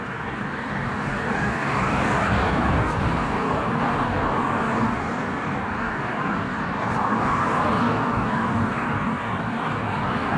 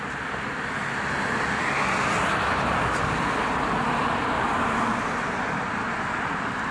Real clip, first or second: second